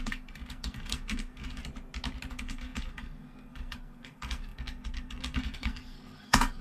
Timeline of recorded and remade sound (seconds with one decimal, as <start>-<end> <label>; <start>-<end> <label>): 0.0-1.6 remade; 1.6-2.3 recorded; 2.3-6.6 remade